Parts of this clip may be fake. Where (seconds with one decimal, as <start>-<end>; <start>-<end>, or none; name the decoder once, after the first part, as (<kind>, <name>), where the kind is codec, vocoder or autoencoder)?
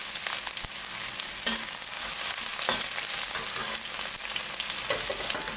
none